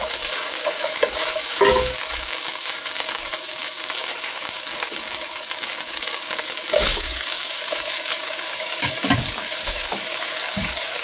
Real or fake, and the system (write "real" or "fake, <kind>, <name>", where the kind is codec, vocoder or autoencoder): fake, codec, DAC